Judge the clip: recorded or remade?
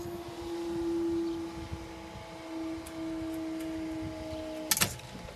recorded